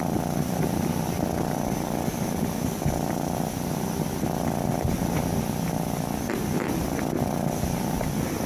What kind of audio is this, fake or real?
real